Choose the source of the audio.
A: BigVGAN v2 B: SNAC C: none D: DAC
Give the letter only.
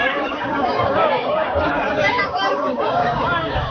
D